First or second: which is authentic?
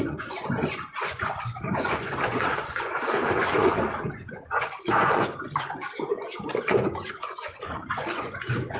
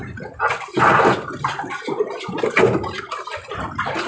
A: second